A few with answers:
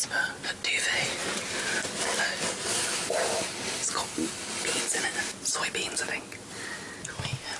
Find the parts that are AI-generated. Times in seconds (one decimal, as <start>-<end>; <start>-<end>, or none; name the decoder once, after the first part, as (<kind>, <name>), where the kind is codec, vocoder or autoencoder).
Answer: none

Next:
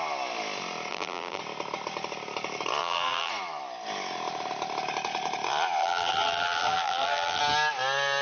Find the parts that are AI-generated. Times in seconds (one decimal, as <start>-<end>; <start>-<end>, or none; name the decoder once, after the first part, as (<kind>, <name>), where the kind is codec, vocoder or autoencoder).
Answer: 0.9-1.4 (vocoder, BigVGAN v2); 2.8-3.3; 5.8-7.4

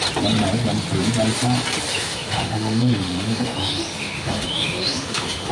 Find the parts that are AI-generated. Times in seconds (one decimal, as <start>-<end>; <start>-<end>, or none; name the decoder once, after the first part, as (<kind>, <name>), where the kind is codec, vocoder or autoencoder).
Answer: 1.9-5.5 (autoencoder, DAC-VAE)

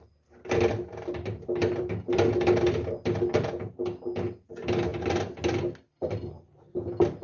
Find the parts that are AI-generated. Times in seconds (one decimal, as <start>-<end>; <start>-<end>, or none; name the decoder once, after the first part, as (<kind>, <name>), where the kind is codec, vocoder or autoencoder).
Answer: none

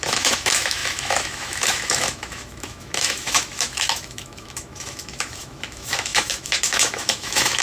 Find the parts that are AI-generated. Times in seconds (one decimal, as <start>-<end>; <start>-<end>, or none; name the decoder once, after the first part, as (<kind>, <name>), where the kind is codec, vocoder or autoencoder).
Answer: 0.0-7.6 (autoencoder, DAC-VAE)

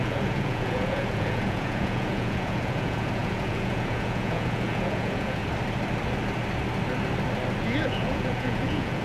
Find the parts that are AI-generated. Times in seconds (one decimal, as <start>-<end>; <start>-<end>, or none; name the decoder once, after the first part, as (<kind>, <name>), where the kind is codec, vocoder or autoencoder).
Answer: 0.0-5.4 (vocoder, Vocos); 7.6-9.0